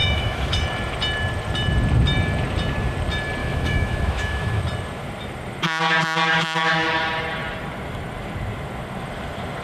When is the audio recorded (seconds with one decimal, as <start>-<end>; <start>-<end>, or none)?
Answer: 0.6-3.4; 4.6-6.3; 6.9-9.6